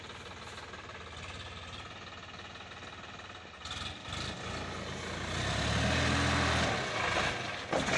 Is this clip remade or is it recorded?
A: recorded